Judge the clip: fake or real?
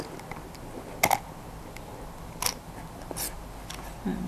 real